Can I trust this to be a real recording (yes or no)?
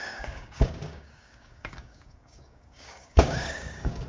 no